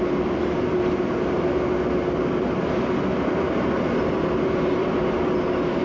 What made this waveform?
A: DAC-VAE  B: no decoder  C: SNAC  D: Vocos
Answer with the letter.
B